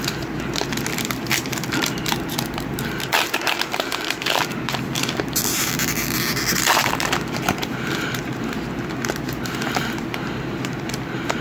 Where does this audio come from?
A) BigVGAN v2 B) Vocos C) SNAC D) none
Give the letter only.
A